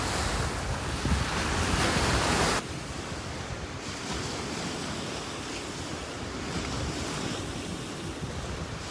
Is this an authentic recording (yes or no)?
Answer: yes